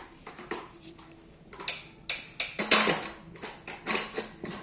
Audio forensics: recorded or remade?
recorded